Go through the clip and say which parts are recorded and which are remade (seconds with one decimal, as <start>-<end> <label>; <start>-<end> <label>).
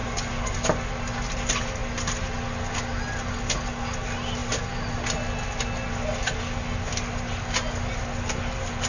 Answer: 0.0-8.9 recorded